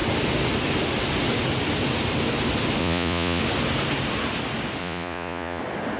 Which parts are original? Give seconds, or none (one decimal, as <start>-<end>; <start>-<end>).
0.0-2.8; 3.4-4.8; 5.6-6.0